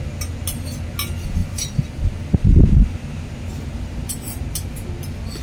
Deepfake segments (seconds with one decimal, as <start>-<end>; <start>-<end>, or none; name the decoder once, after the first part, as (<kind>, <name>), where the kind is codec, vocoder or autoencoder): 1.4-2.1 (vocoder, BigVGAN v2); 3.5-4.4